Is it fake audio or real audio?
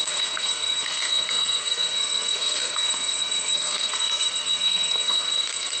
fake